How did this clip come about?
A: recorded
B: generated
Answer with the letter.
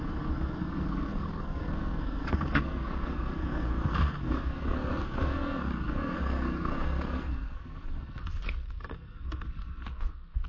B